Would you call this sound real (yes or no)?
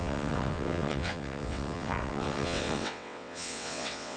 no